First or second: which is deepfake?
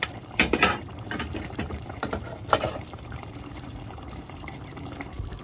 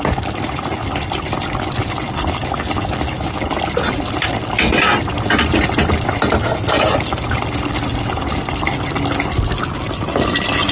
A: first